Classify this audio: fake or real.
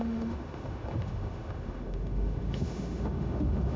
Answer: fake